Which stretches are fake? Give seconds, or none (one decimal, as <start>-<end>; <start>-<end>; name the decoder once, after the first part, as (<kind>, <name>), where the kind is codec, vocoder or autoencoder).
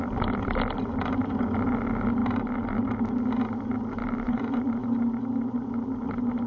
4.0-4.7 (vocoder, BigVGAN v2)